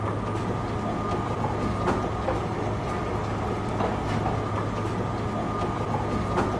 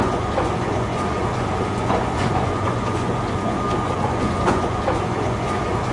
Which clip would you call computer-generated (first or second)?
second